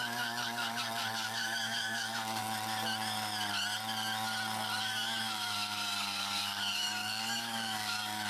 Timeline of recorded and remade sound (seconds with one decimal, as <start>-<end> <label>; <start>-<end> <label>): 0.0-2.4 remade; 2.4-4.8 recorded; 4.8-8.3 remade